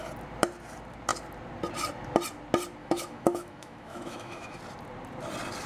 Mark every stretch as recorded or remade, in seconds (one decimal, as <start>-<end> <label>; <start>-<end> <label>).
0.0-2.8 recorded; 2.8-4.6 remade; 4.6-5.7 recorded